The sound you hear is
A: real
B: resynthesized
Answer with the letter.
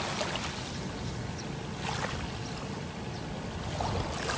A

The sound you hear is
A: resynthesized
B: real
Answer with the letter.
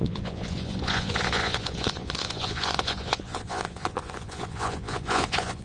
A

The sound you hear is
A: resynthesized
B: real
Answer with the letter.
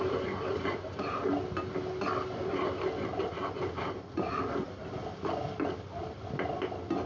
B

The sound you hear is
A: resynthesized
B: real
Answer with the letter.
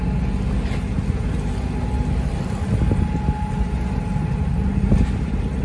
B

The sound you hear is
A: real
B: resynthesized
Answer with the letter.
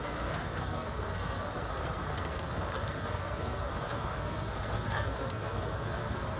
B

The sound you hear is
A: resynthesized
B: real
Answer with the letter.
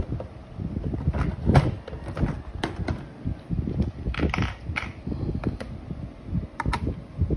B